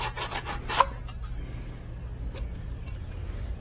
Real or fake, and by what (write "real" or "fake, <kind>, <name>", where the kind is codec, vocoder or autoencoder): real